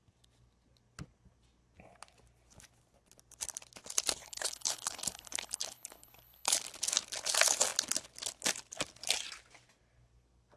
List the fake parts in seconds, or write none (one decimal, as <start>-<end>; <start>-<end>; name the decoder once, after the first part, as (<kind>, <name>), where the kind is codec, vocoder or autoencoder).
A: 4.2-6.6 (codec, HILCodec)